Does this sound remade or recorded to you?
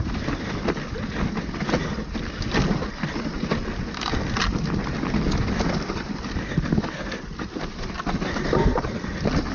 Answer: recorded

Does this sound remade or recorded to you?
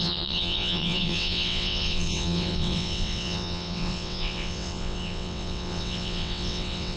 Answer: remade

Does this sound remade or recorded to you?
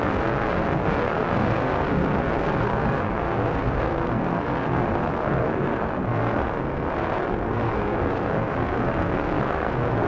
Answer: remade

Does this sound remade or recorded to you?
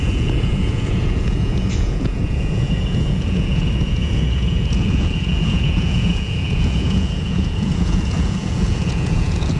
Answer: remade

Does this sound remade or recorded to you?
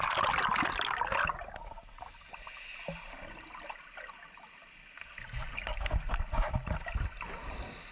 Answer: recorded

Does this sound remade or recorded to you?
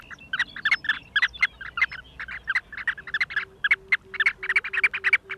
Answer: recorded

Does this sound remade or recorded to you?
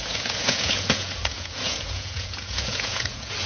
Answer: remade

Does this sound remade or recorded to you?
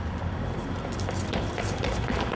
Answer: remade